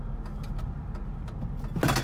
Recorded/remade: recorded